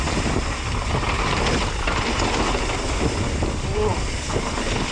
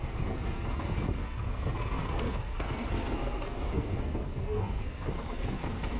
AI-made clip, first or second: second